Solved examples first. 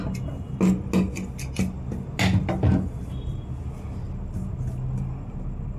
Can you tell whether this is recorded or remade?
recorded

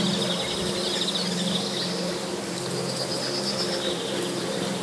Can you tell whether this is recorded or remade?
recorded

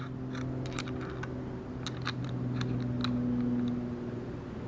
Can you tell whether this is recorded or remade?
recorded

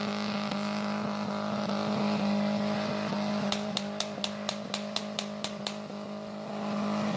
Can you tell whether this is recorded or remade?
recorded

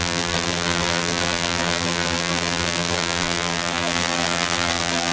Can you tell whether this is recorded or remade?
remade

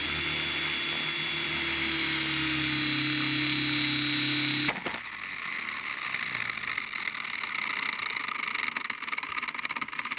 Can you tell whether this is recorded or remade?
recorded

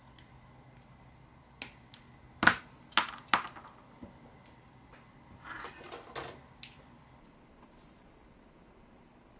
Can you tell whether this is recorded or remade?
recorded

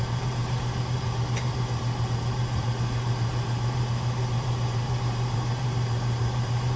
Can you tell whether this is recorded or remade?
remade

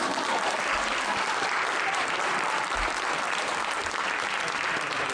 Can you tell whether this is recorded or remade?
remade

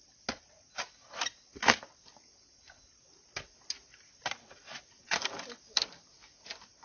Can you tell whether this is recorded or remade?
recorded